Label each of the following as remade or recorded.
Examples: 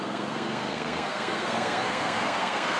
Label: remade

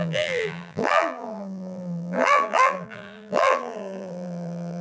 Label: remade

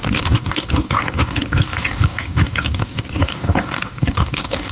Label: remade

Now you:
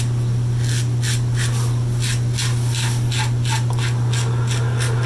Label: recorded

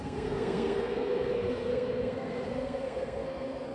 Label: remade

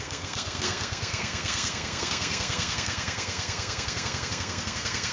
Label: remade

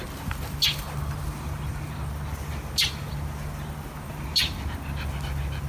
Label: recorded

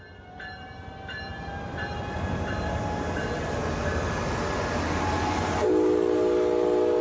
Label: recorded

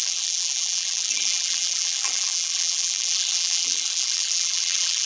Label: remade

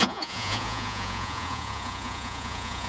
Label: remade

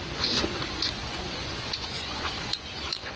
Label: remade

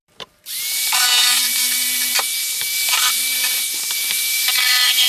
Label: remade